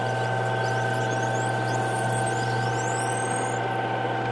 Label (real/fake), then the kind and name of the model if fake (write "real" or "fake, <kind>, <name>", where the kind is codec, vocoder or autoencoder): real